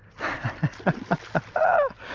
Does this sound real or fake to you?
real